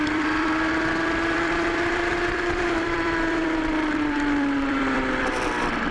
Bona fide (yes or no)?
no